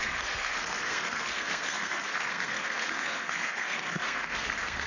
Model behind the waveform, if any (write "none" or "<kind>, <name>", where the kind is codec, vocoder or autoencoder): codec, SNAC